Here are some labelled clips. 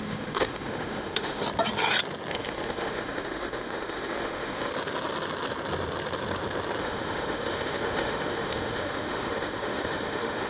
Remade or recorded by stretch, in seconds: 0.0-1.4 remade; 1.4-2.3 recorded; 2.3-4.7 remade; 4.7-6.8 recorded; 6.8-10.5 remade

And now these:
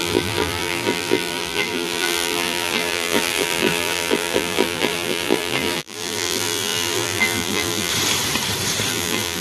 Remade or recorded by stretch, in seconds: 0.0-7.9 remade; 7.9-8.9 recorded; 8.9-9.4 remade